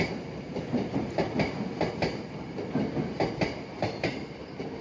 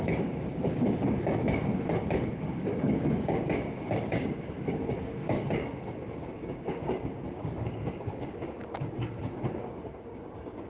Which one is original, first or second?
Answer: first